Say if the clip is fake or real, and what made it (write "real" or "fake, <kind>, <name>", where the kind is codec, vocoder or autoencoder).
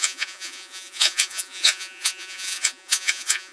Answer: fake, vocoder, Vocos